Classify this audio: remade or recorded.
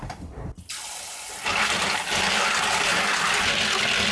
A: recorded